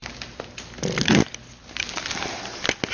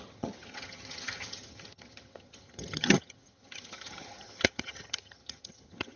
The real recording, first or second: first